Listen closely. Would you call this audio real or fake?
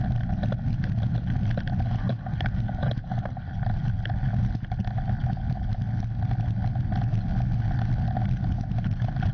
real